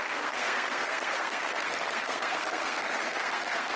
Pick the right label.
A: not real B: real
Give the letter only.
A